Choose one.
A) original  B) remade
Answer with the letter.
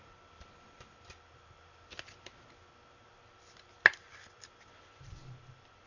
A